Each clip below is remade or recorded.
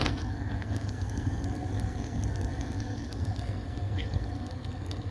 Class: remade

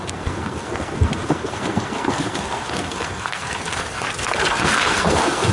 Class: remade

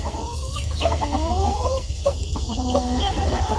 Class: remade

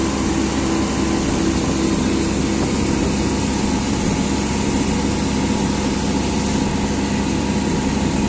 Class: recorded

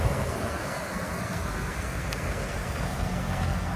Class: remade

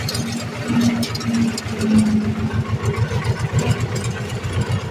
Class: recorded